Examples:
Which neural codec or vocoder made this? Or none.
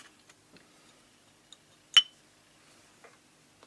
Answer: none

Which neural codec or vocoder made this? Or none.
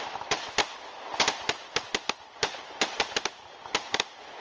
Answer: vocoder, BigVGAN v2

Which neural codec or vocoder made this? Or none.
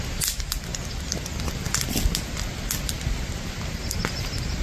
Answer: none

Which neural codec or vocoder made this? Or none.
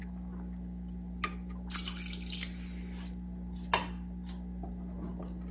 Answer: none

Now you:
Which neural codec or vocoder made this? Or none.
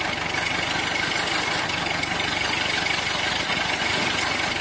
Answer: none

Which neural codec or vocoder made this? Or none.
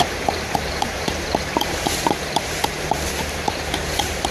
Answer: vocoder, BigVGAN v2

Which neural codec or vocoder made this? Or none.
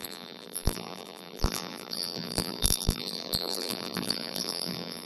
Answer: vocoder, BigVGAN v2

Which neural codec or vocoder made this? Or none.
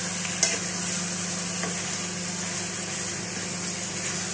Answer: none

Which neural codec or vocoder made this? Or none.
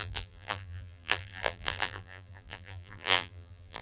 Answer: vocoder, BigVGAN v2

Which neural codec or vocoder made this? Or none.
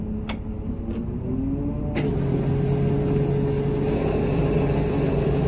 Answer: none